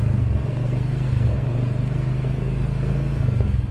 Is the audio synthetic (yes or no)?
yes